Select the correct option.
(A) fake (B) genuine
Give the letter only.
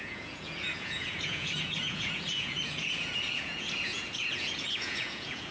A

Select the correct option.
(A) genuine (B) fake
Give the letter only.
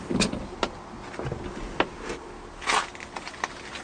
A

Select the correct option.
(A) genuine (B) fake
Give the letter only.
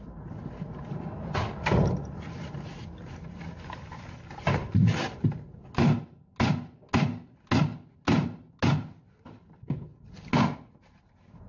A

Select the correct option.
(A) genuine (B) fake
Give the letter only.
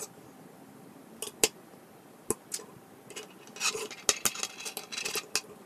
A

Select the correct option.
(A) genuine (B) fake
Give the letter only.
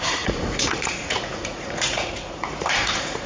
B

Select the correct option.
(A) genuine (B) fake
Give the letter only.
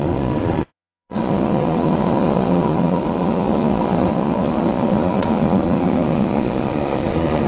B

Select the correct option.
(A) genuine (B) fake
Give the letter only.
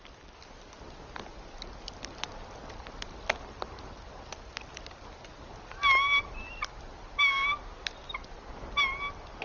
A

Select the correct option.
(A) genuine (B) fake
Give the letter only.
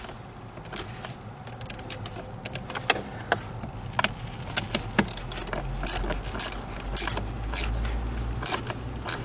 A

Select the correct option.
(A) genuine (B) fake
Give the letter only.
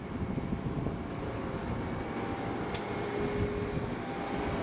A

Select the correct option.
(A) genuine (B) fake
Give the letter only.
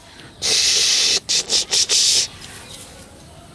A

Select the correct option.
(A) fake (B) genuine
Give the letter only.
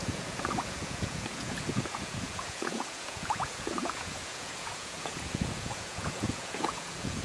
A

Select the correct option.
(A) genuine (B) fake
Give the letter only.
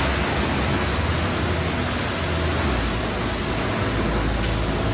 A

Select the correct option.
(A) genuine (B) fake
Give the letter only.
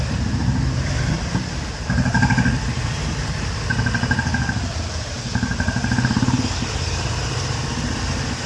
A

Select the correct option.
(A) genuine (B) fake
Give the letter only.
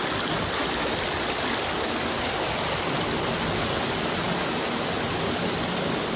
A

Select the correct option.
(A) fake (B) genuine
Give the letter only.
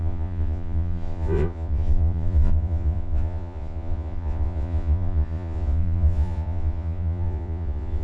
A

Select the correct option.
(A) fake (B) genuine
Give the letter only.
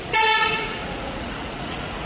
A